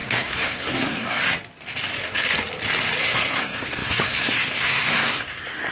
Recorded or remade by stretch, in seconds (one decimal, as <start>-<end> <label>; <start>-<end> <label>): 0.0-1.2 remade; 1.2-3.0 recorded; 3.0-5.7 remade